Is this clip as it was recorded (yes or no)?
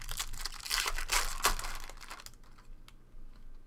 yes